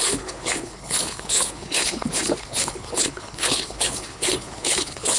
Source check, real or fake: fake